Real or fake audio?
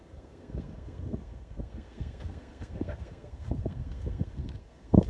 fake